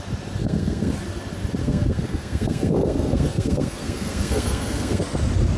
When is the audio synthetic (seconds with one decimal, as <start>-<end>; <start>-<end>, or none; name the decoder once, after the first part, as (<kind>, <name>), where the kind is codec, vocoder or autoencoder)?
0.4-0.9 (codec, SNAC); 1.6-5.0